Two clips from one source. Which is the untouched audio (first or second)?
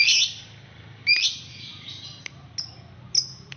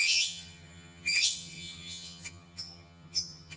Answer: first